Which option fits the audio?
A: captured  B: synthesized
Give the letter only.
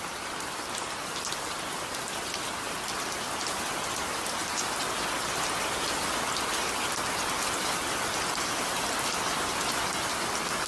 A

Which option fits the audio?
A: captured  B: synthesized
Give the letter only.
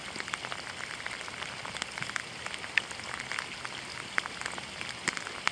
A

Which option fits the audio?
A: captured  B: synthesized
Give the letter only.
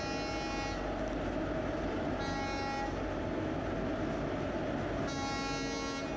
A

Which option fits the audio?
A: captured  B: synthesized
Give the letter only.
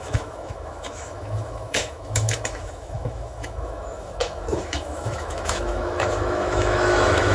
B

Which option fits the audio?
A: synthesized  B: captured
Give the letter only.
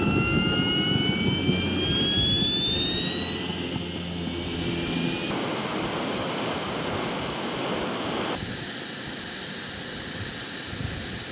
B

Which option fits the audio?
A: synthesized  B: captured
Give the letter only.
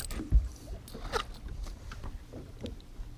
B